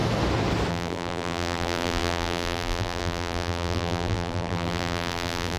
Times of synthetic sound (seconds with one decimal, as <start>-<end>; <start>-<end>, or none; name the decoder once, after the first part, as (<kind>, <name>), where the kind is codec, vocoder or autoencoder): 0.7-5.6 (vocoder, BigVGAN v2)

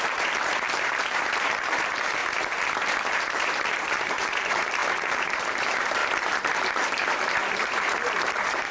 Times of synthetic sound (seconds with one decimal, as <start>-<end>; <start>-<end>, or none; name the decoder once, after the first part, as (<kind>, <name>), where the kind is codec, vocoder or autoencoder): 0.0-2.2 (vocoder, BigVGAN v2); 3.1-6.0; 7.5-8.7